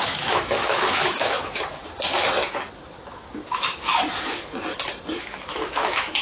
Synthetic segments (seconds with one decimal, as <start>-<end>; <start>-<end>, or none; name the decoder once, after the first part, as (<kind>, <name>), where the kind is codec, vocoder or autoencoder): 0.0-1.8 (autoencoder, DAC-VAE); 3.1-4.0; 5.2-6.2